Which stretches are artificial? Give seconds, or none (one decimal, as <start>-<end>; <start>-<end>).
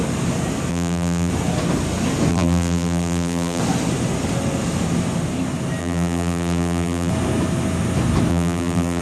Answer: 0.7-1.3; 2.3-3.6; 5.8-7.1; 8.3-9.0